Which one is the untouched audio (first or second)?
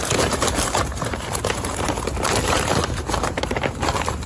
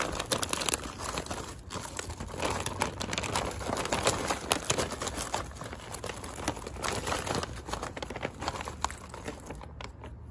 second